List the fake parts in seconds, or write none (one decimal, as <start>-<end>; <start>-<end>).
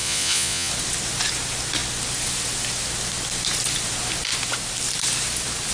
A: 0.0-0.7